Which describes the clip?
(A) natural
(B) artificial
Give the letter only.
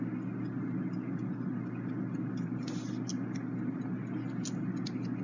A